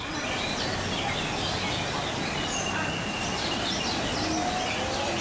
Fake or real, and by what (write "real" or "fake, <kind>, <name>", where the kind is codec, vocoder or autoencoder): real